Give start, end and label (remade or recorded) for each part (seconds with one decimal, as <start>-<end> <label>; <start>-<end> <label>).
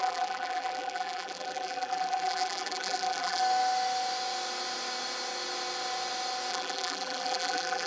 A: 0.0-3.4 remade; 3.4-6.5 recorded; 6.5-7.9 remade